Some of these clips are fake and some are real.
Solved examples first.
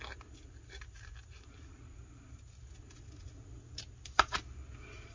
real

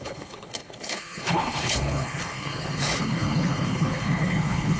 fake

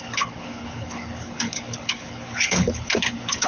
fake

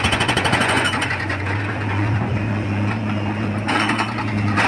fake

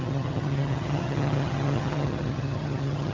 fake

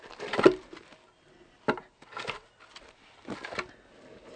real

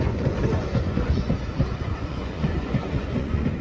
fake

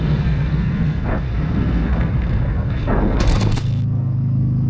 fake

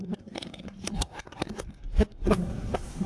fake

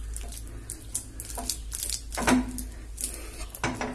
real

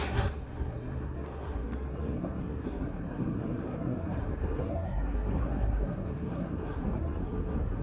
fake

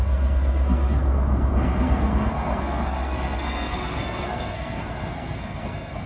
fake